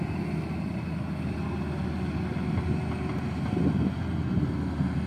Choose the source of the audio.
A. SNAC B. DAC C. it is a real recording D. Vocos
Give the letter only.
C